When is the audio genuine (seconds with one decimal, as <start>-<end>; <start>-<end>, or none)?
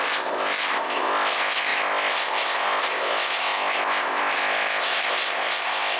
none